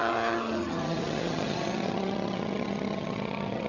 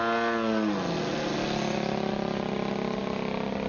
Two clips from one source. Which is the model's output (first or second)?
first